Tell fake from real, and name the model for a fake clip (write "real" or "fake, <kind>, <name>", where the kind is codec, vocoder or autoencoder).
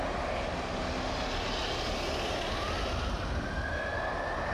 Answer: real